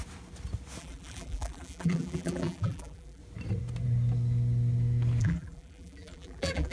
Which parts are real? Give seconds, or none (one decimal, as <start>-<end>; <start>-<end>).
0.0-0.8; 3.2-5.2